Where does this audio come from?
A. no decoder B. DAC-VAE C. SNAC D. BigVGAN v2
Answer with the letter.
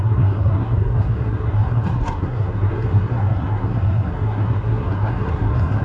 C